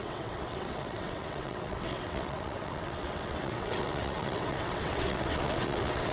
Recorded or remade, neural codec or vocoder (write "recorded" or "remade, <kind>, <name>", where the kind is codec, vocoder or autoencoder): remade, vocoder, WaveNeXt